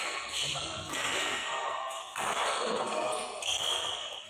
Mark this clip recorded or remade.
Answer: remade